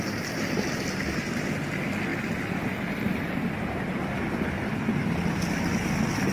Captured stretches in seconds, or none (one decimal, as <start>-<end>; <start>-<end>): 0.0-2.1; 3.4-6.3